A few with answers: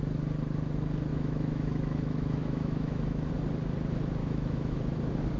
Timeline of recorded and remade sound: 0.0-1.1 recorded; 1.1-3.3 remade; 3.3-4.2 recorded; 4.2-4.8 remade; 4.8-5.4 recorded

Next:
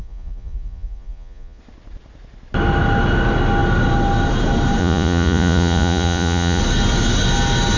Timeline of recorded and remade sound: 0.0-1.6 remade; 1.6-4.8 recorded; 4.8-6.6 remade; 6.6-7.8 recorded

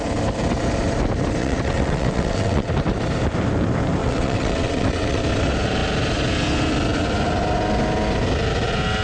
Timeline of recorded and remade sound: 0.0-1.4 recorded; 1.4-2.7 remade; 2.7-4.0 recorded; 4.0-5.2 remade; 5.2-9.0 recorded

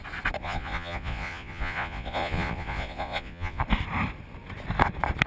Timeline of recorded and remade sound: 0.0-0.4 recorded; 0.4-3.6 remade; 3.6-5.3 recorded

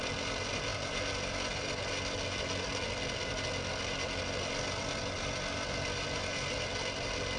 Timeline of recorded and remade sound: 0.0-7.4 recorded

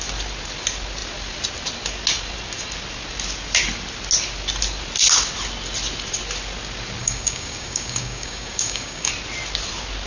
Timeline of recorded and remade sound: 0.0-7.0 recorded; 7.0-9.1 remade; 9.1-10.1 recorded

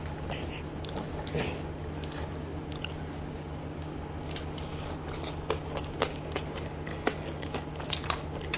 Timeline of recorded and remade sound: 0.0-6.9 recorded; 6.9-7.5 remade; 7.5-8.6 recorded

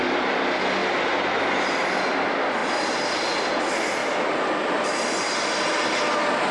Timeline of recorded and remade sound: 0.0-6.5 recorded